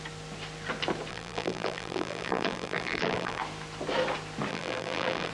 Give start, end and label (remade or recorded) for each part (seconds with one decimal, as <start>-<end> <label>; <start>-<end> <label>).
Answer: 0.0-1.1 recorded; 1.1-3.4 remade; 3.4-4.5 recorded; 4.5-5.3 remade